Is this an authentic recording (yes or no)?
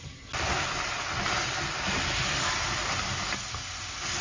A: yes